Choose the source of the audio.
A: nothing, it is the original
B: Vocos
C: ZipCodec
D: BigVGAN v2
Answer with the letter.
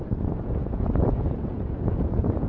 B